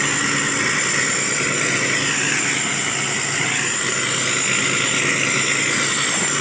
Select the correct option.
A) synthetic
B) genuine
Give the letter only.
B